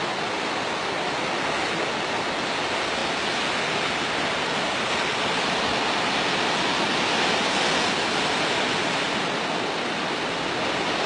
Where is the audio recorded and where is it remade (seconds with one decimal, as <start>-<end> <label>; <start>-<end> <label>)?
0.0-11.1 recorded